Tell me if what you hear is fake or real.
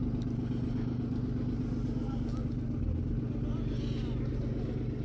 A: real